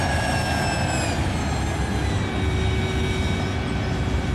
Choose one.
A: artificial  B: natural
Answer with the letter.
B